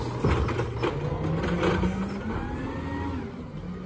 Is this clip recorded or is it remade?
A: recorded